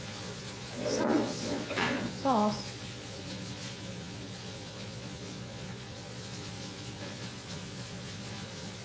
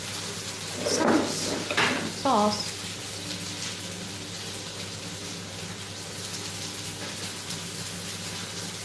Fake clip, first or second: first